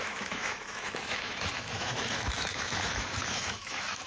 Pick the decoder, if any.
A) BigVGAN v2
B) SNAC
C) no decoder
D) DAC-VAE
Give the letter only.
D